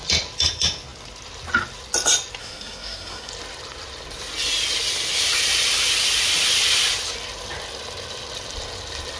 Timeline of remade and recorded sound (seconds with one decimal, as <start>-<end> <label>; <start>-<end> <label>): 0.0-2.4 recorded; 2.4-3.3 remade; 3.3-9.2 recorded